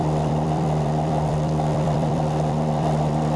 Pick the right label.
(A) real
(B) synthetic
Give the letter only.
B